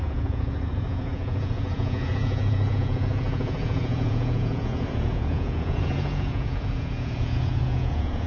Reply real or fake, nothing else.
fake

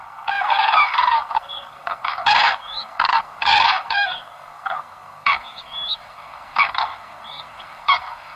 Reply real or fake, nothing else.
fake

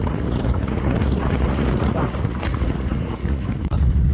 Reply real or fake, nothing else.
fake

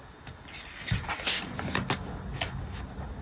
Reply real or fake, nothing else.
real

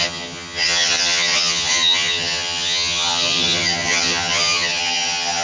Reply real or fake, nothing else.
fake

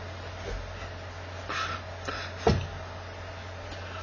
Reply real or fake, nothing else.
real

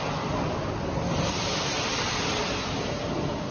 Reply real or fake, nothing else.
real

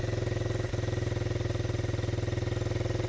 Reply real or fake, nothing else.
real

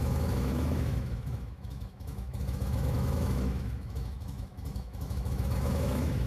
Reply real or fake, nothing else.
fake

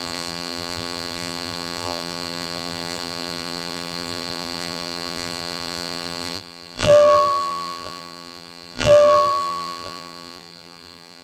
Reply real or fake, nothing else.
fake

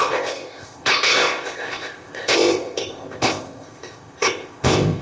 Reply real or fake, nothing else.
fake